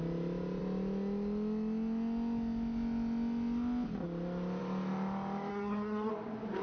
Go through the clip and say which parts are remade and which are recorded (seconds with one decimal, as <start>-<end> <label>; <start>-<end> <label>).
0.0-5.5 recorded; 5.5-6.1 remade; 6.1-6.6 recorded